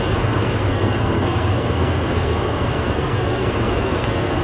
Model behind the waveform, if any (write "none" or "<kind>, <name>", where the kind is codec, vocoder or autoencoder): codec, SNAC